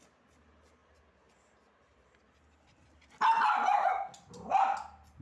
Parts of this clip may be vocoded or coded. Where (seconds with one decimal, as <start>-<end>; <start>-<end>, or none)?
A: none